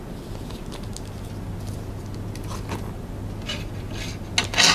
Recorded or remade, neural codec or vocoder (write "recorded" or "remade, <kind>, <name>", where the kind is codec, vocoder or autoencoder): recorded